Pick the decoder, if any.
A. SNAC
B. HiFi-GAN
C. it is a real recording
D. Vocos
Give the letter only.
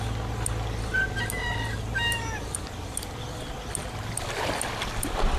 C